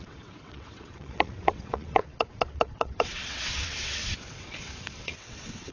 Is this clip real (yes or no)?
no